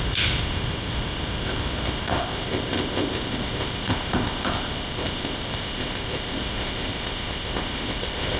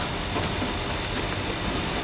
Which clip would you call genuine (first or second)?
second